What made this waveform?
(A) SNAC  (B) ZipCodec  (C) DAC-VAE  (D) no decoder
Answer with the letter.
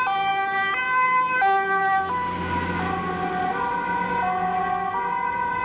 D